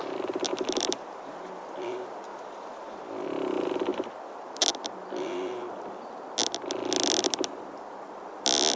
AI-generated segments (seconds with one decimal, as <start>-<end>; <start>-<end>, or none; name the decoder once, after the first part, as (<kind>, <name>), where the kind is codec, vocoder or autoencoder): 0.5-1.5 (vocoder, BigVGAN v2); 2.3-3.1